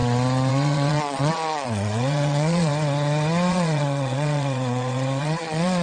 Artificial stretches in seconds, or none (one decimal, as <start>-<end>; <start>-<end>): 0.5-2.7; 3.5-5.8